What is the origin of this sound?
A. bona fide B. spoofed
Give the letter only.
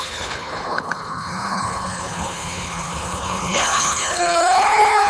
B